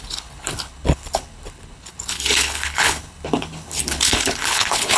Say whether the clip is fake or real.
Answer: fake